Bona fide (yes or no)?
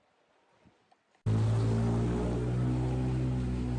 yes